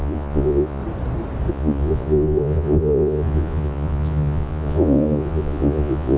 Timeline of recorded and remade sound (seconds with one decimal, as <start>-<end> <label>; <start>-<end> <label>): 0.0-0.8 remade; 0.8-1.5 recorded; 1.5-6.2 remade